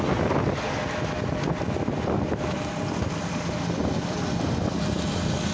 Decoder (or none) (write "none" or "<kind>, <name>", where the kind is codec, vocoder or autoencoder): none